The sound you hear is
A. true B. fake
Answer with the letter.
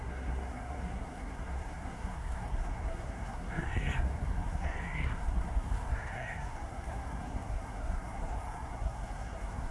B